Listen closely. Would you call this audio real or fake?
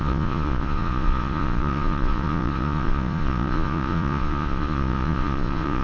fake